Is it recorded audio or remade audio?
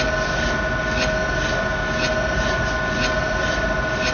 recorded